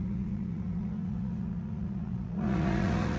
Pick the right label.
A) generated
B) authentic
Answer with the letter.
A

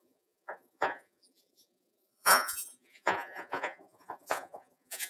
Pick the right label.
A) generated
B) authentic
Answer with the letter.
A